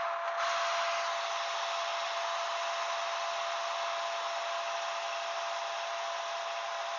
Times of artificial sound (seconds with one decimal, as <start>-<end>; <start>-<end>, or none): none